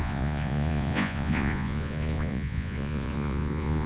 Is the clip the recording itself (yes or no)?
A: no